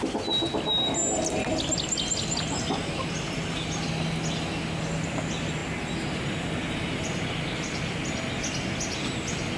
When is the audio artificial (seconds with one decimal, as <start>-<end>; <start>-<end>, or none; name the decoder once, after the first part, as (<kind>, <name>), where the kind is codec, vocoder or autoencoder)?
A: none